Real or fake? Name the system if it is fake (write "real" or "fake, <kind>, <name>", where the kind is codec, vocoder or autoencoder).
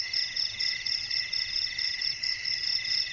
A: real